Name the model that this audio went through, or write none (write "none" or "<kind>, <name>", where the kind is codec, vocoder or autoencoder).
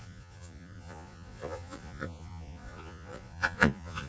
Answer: vocoder, Vocos